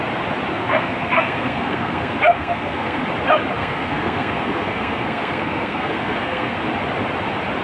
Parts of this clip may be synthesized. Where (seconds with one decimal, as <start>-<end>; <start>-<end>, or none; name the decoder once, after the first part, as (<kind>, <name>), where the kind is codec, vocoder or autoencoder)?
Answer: 0.5-3.0 (codec, SNAC); 3.6-6.6